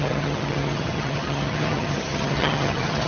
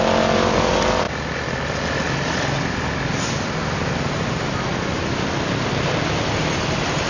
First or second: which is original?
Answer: second